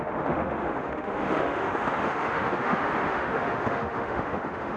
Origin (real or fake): fake